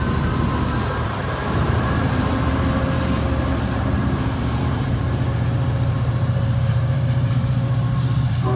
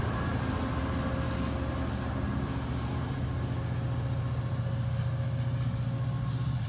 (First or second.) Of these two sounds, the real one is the second